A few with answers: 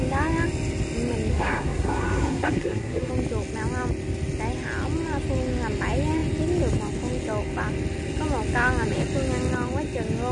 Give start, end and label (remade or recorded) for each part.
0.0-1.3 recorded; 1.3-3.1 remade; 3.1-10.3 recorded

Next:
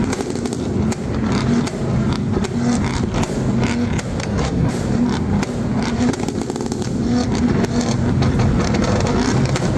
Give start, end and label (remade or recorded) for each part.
0.0-4.2 recorded; 4.2-4.7 remade; 4.7-9.8 recorded

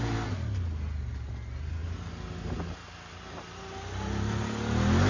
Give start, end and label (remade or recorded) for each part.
0.0-5.1 recorded